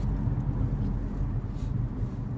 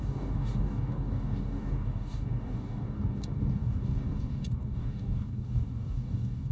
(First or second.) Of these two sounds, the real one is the first